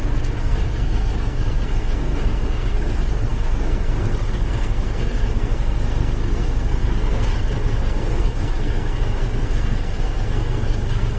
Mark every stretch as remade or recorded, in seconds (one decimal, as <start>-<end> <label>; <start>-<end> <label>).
0.0-11.2 remade